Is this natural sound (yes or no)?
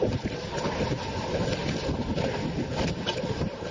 yes